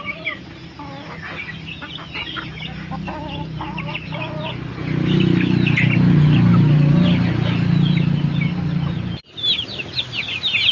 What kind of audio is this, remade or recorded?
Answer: recorded